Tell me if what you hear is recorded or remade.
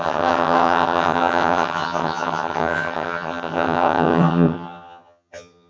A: remade